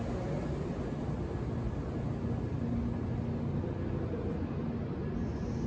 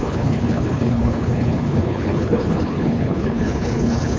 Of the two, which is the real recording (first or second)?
first